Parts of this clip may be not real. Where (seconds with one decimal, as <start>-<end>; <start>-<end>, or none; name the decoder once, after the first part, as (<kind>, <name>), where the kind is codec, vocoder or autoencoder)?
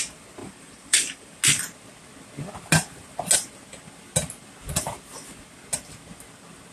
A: 0.4-1.4 (vocoder, BigVGAN v2)